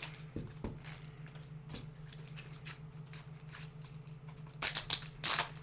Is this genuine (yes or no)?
yes